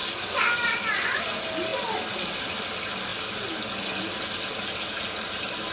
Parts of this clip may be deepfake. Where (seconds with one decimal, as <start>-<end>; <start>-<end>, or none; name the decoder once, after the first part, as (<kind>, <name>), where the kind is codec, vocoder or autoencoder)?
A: none